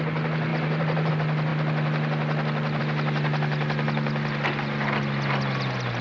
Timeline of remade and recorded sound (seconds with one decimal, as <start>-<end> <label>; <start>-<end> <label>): 0.0-0.5 recorded; 0.5-1.1 remade; 1.1-6.0 recorded